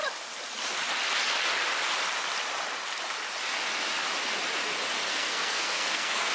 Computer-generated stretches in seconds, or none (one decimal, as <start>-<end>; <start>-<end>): 5.1-6.3